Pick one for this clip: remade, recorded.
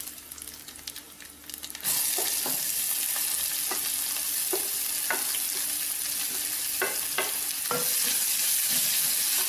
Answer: recorded